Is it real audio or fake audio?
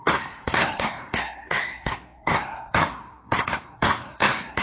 fake